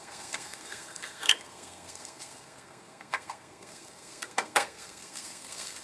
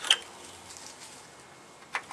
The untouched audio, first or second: second